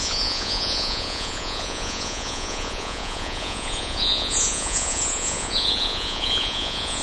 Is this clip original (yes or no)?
no